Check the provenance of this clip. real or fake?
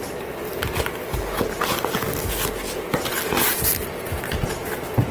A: real